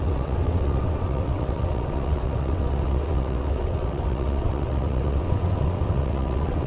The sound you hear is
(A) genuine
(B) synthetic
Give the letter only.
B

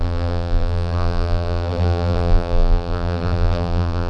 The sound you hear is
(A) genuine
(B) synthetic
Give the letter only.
B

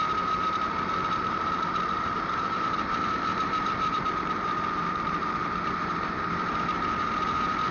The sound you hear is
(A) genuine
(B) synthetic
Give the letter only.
B